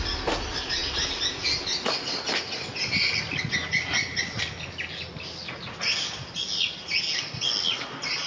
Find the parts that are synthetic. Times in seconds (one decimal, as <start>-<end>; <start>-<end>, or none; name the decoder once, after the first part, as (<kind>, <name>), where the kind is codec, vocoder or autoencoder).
none